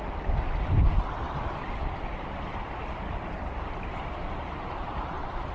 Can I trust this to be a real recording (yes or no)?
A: yes